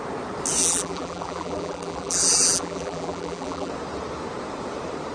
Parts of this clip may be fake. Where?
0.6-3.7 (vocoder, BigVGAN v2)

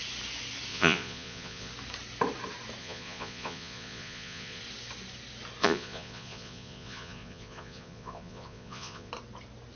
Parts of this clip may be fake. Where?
0.7-1.7 (vocoder, Vocos); 2.8-4.6; 5.6-9.1